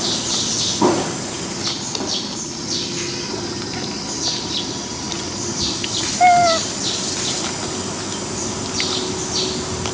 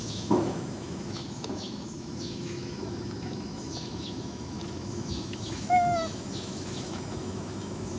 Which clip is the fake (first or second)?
second